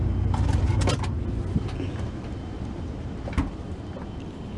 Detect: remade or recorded recorded